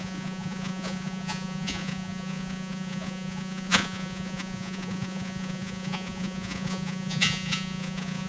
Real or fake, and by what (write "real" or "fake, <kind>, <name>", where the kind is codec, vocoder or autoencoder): fake, vocoder, Vocos